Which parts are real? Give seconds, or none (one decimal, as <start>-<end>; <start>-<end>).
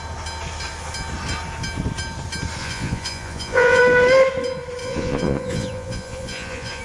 0.0-2.6; 3.8-4.8